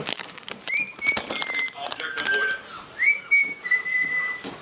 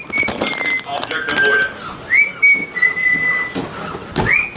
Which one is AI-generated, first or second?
first